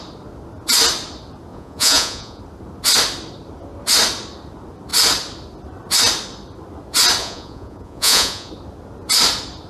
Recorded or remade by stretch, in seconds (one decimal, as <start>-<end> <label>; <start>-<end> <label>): 0.0-1.5 recorded; 1.5-2.4 remade; 2.4-7.2 recorded; 7.2-8.5 remade; 8.5-9.7 recorded